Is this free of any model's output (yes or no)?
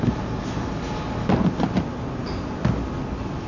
yes